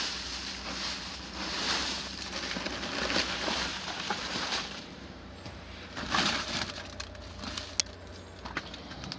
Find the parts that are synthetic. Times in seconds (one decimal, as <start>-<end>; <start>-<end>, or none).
1.6-2.4; 3.7-6.7